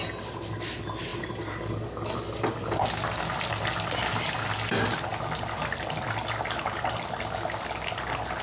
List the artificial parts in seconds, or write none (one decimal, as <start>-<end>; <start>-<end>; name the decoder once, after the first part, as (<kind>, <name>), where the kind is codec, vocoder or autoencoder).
none